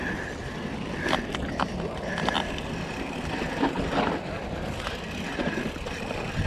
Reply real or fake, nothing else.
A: real